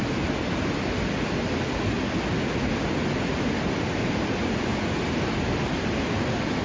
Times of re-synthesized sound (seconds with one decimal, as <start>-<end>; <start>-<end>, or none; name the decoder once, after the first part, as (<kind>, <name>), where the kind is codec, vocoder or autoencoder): 4.4-5.0 (vocoder, Vocos)